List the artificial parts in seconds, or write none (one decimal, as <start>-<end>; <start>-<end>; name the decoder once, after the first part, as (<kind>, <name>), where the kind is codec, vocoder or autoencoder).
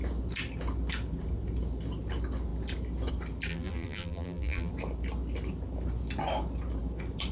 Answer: 3.5-4.7 (vocoder, BigVGAN v2)